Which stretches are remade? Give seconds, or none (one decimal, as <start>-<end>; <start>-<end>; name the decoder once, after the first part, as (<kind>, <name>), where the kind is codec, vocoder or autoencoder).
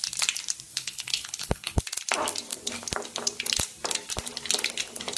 0.7-1.8 (codec, HILCodec)